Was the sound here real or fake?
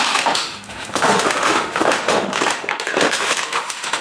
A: fake